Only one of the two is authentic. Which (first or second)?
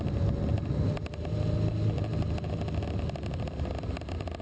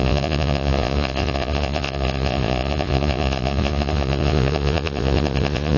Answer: first